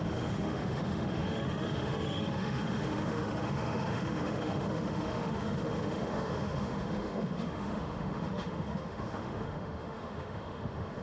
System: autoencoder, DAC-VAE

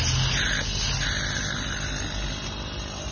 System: none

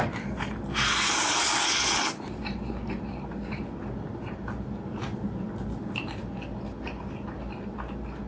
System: none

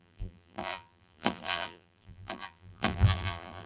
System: vocoder, BigVGAN v2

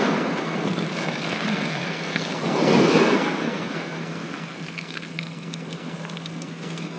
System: codec, SNAC